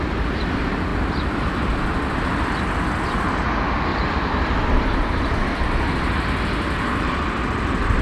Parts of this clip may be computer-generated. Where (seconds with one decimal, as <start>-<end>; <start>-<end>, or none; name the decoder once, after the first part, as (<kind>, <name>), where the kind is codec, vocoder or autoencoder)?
3.9-5.4 (vocoder, BigVGAN v2)

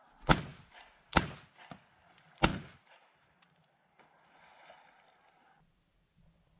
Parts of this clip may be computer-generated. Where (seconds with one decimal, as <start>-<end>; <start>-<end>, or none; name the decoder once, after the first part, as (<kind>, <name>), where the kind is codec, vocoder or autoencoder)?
0.5-1.2 (vocoder, BigVGAN v2); 2.5-4.0

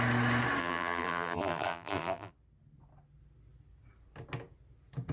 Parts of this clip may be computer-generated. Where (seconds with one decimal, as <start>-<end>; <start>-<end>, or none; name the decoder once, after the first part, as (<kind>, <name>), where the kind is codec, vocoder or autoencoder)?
0.6-2.3 (vocoder, BigVGAN v2)

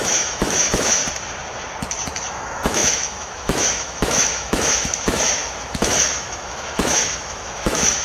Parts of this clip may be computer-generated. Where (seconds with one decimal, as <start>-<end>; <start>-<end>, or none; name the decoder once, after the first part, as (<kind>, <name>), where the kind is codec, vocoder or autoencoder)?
0.0-1.0 (autoencoder, DAC-VAE); 2.3-8.0

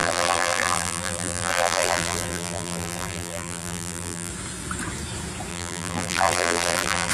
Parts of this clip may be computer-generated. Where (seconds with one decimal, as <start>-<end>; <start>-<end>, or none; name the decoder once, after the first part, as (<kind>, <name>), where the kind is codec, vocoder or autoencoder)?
0.0-4.3 (vocoder, BigVGAN v2); 5.5-7.1

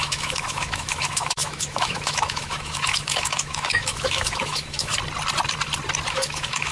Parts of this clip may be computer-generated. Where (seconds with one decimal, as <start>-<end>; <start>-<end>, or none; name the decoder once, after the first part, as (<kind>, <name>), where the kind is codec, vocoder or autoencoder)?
0.0-4.9 (autoencoder, DAC-VAE); 6.1-6.7